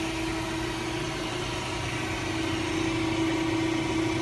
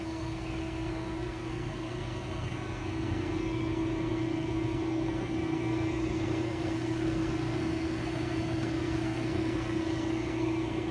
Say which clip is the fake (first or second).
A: second